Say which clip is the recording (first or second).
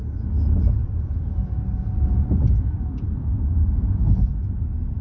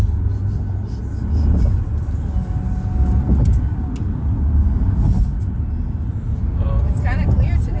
second